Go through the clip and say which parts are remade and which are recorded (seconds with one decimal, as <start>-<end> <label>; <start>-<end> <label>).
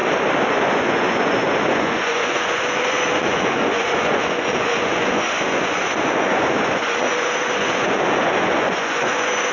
0.0-0.5 recorded; 0.5-9.5 remade